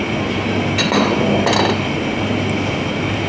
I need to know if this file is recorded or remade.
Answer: recorded